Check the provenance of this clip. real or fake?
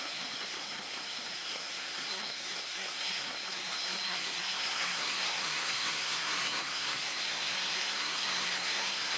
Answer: fake